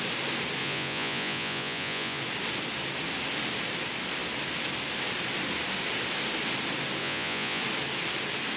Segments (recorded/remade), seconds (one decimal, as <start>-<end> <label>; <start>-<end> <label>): 0.0-0.6 recorded; 0.6-2.2 remade; 2.2-7.0 recorded; 7.0-7.6 remade; 7.6-8.6 recorded